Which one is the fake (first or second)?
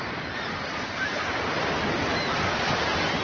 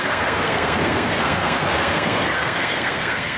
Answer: second